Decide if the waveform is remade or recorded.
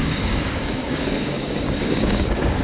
remade